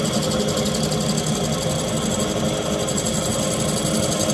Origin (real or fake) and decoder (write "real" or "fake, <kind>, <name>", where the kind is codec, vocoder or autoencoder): real